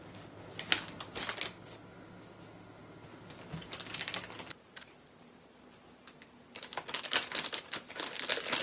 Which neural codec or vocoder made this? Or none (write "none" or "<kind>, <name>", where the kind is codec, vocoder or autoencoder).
none